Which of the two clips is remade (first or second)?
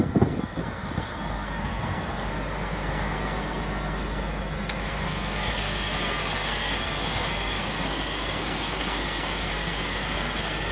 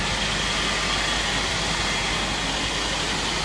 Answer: first